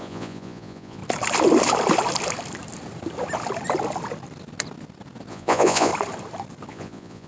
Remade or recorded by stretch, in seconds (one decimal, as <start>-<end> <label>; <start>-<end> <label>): 0.0-1.0 remade; 1.0-5.3 recorded; 5.3-5.9 remade; 5.9-6.7 recorded; 6.7-7.3 remade